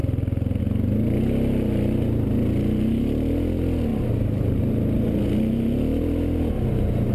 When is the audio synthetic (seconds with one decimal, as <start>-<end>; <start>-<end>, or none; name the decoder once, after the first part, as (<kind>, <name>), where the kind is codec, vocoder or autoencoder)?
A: none